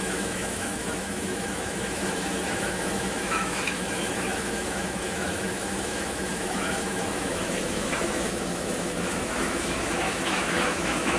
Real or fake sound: fake